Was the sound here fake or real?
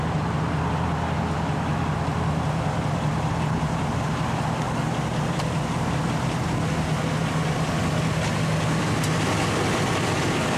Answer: real